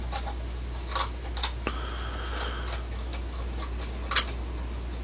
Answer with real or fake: real